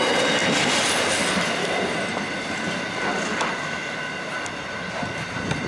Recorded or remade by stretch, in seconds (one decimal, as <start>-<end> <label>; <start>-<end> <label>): 0.0-5.7 recorded